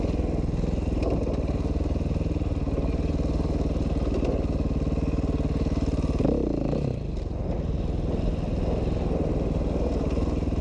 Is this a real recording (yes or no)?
yes